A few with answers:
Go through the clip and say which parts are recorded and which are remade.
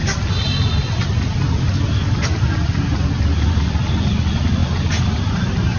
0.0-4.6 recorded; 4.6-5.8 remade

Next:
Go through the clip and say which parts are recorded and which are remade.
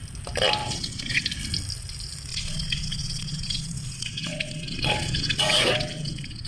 0.0-0.6 recorded; 0.6-1.2 remade; 1.2-2.3 recorded; 2.3-6.5 remade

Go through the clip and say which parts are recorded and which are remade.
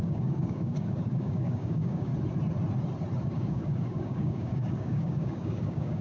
0.0-2.1 remade; 2.1-3.2 recorded; 3.2-6.0 remade